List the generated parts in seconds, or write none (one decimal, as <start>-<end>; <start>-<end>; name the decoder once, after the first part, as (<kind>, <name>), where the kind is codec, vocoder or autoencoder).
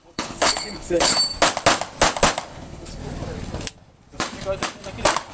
0.0-1.1 (codec, HILCodec); 2.5-3.0